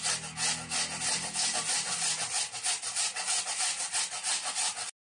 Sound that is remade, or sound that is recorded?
recorded